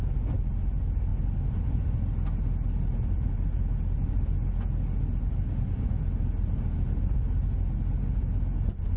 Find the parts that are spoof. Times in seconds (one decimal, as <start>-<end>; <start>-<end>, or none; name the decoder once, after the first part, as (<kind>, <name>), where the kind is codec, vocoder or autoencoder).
none